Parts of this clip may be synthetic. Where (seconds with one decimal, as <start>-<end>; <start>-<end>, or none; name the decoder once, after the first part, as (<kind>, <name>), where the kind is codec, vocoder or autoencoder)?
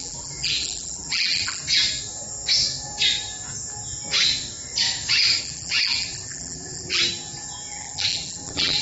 0.0-1.6 (vocoder, BigVGAN v2); 5.4-7.0; 7.7-8.8